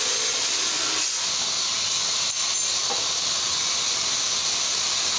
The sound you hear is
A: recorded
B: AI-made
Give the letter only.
A